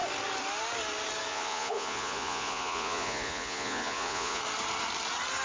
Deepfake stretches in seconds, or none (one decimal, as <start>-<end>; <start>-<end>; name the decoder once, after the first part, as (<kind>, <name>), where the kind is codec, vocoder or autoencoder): 1.3-4.4 (vocoder, Vocos)